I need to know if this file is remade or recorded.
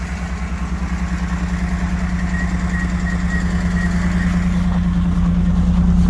recorded